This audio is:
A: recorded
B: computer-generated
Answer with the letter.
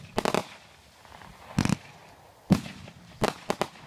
A